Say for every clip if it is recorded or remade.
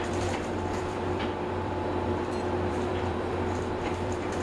remade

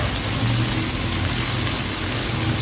recorded